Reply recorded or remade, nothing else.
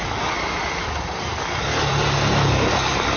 recorded